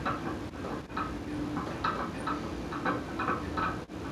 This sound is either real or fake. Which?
real